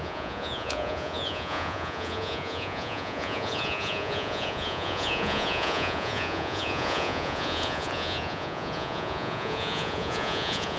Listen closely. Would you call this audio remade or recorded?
remade